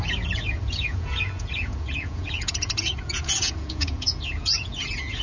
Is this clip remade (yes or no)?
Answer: yes